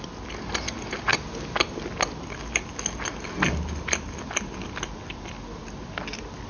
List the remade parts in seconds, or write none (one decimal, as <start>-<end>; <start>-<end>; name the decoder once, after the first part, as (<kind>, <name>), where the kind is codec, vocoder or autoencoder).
none